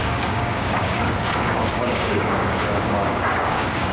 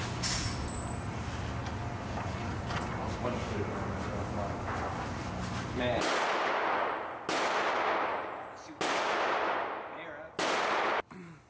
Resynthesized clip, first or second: first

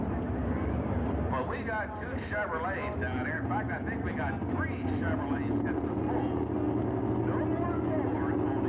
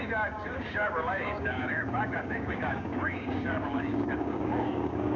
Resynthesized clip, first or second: second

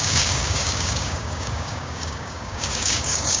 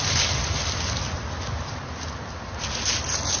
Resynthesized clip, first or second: first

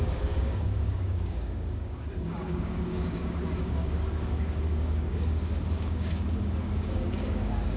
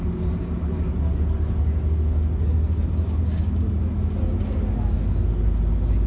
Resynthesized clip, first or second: first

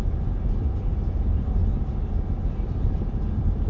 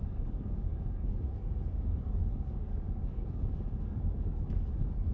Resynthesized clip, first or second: second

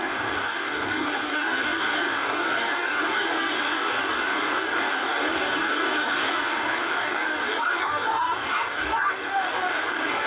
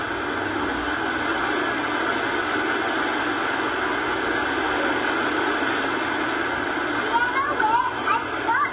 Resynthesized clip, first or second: first